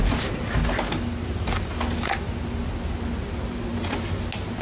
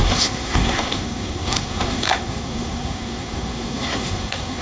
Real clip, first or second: first